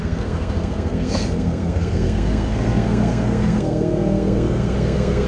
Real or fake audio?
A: fake